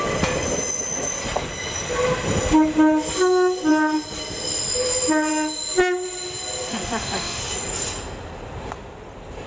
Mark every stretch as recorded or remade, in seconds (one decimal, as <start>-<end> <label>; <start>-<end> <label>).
0.0-6.7 recorded; 6.7-7.4 remade; 7.4-9.5 recorded